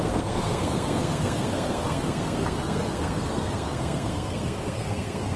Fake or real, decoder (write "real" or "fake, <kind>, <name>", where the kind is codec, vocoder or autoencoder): fake, codec, SNAC